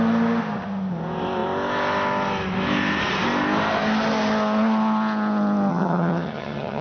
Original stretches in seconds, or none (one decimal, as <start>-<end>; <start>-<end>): 0.0-5.7

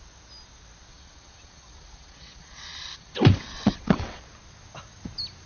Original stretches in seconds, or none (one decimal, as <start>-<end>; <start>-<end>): 0.0-0.9; 4.2-5.5

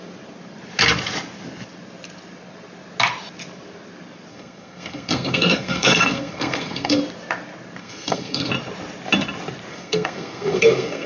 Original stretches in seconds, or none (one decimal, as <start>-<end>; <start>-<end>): 0.0-4.3; 7.0-7.8; 8.5-9.7

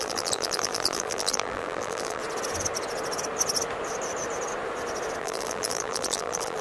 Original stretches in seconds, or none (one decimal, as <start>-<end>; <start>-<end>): 2.2-5.2

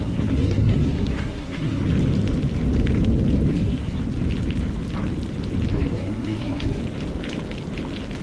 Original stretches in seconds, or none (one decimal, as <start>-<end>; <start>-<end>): 1.8-3.5; 4.0-5.7; 6.8-8.2

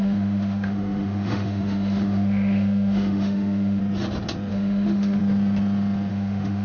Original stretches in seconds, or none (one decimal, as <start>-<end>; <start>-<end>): 3.8-4.5; 5.2-6.1

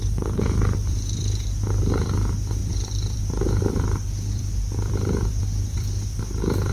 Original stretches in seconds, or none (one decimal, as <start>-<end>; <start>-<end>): none

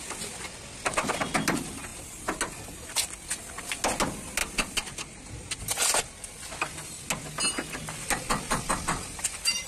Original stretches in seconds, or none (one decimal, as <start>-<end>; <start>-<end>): 0.0-9.7